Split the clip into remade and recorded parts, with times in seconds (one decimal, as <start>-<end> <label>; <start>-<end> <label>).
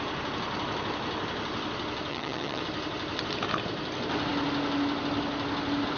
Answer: 0.0-2.1 recorded; 2.1-2.6 remade; 2.6-6.0 recorded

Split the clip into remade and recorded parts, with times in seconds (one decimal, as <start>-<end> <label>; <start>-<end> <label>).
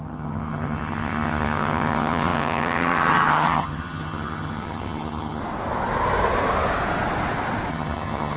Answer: 0.0-5.4 remade; 5.4-7.7 recorded; 7.7-8.4 remade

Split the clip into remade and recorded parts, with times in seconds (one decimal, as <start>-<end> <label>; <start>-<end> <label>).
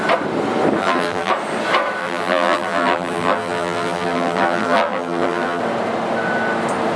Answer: 0.0-0.8 recorded; 0.8-1.3 remade; 1.3-2.0 recorded; 2.0-5.6 remade; 5.6-7.0 recorded